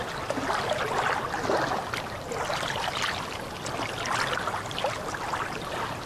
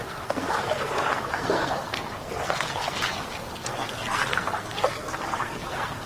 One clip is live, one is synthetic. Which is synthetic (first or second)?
second